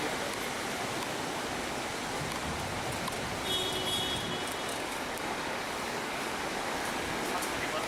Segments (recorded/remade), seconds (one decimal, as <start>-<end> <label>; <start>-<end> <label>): 0.0-4.7 recorded; 4.7-6.9 remade; 6.9-7.9 recorded